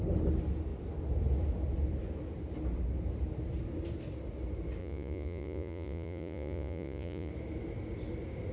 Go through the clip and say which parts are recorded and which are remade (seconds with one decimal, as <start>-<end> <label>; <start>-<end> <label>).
0.0-4.8 recorded; 4.8-7.3 remade; 7.3-8.5 recorded